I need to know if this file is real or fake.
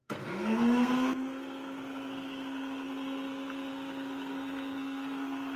fake